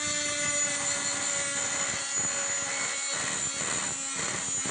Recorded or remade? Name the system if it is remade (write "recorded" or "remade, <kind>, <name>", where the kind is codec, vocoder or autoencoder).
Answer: recorded